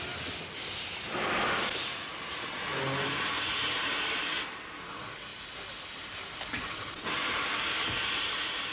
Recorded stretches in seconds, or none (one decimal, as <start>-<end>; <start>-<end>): 0.0-8.7